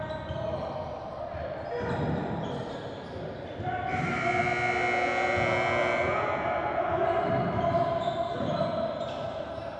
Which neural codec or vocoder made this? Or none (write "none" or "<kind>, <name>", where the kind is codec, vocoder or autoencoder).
none